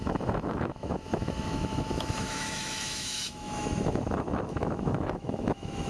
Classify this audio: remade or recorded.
remade